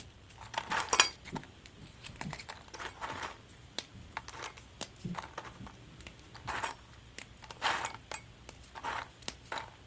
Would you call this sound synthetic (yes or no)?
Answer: no